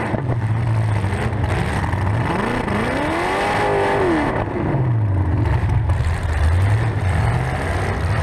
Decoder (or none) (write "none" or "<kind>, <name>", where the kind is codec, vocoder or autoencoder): none